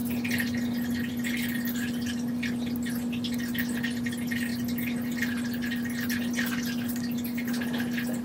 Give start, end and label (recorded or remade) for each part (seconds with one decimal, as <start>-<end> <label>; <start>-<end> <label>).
0.0-8.2 recorded